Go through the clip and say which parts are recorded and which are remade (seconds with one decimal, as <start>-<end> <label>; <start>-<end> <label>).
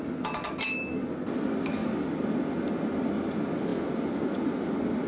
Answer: 0.0-5.1 recorded